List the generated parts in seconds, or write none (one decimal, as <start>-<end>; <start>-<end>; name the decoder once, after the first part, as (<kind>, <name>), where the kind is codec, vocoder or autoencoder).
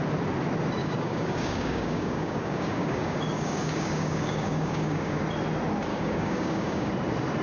0.8-5.2 (codec, DAC); 5.9-6.9